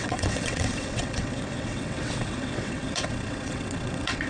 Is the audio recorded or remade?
remade